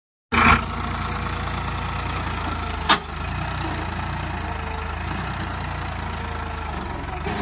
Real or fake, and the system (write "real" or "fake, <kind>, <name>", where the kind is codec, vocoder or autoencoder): real